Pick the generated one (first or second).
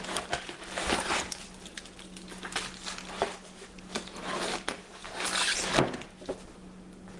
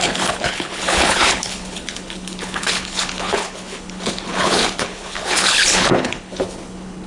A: second